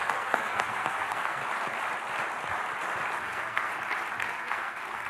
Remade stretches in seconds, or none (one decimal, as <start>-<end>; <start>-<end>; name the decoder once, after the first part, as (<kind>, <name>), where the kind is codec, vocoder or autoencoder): 0.0-1.4 (codec, SNAC); 3.2-3.7; 4.2-5.1